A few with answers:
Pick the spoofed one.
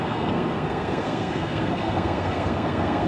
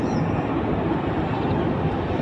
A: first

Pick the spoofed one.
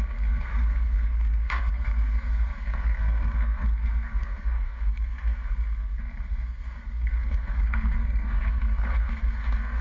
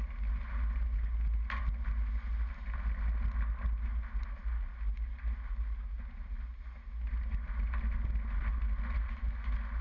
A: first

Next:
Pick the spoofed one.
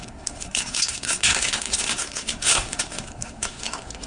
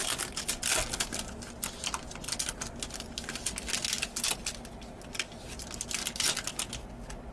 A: first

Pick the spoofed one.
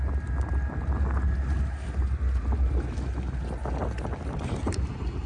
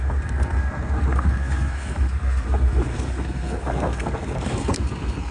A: second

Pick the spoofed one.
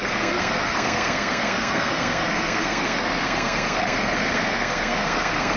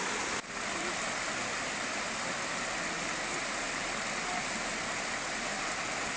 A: first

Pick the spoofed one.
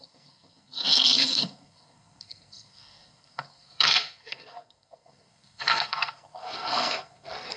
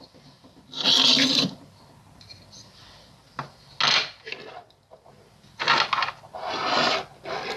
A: first